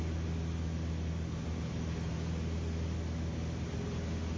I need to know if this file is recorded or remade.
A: recorded